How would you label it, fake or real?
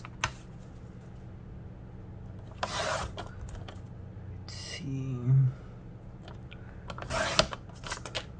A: real